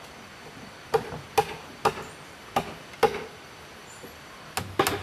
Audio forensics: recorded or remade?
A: recorded